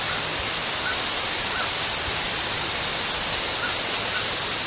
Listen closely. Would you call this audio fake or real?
real